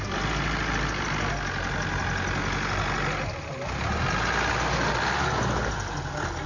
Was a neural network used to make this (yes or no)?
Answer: no